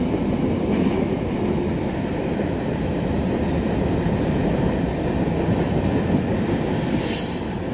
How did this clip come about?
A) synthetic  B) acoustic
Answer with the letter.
B